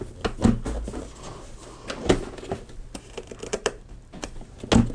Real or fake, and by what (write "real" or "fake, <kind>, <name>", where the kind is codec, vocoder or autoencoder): real